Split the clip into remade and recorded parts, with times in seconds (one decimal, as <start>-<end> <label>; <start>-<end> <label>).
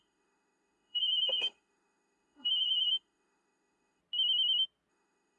0.0-4.0 remade; 4.0-4.9 recorded; 4.9-5.4 remade